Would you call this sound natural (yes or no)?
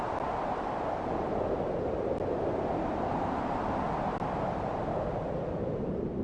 yes